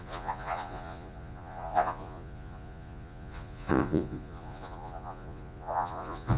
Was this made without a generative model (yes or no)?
no